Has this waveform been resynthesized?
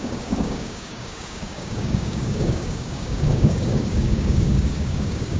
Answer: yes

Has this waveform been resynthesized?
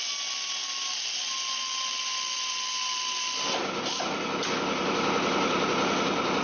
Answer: no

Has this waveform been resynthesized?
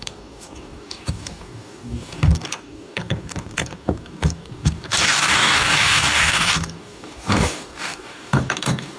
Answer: yes